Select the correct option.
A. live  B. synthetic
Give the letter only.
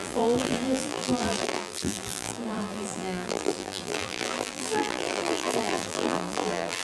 B